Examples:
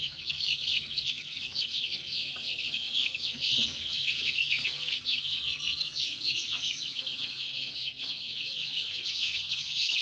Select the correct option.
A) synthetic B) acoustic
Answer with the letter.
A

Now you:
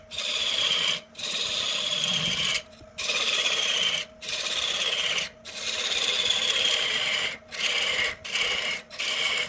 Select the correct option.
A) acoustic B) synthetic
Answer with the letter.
A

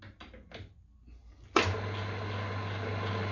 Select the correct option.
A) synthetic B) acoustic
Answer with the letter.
B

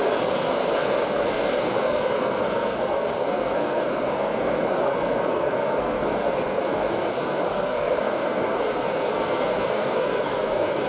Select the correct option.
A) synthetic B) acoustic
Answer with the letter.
A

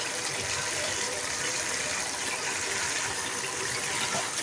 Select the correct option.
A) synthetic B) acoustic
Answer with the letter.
B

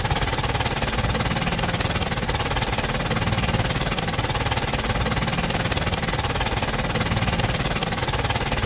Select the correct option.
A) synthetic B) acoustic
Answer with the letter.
B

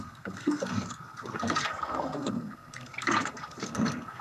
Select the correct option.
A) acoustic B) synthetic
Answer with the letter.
B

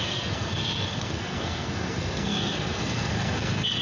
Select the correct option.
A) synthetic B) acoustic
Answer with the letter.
A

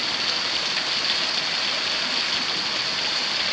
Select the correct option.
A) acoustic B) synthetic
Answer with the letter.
A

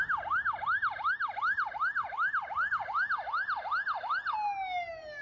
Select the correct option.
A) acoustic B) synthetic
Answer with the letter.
A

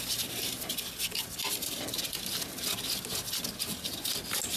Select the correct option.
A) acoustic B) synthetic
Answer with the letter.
A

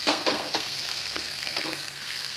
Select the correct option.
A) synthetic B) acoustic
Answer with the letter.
A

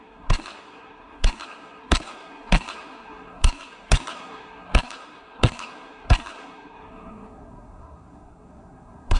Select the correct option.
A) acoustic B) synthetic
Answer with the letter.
B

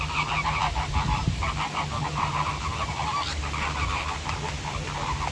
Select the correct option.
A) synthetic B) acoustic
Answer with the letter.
B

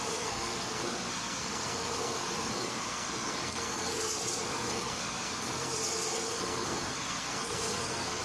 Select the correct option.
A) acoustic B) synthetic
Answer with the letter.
B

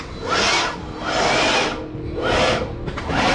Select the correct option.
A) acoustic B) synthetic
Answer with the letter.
A